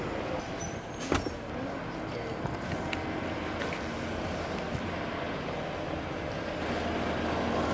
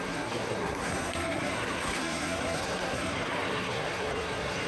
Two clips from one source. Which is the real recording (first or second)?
first